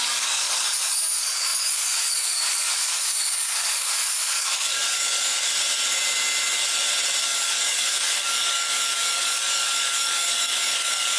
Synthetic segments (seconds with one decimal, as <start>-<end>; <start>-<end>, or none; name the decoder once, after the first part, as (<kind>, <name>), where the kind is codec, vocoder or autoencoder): 0.0-5.5 (codec, DAC); 7.2-11.2